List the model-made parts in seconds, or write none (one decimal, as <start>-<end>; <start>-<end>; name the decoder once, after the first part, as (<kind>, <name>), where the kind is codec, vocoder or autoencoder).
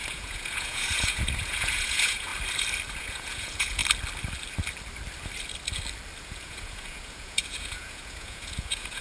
0.0-2.3 (vocoder, Vocos); 2.9-3.8; 6.2-9.0